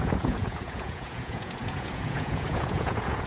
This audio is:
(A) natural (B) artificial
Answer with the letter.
B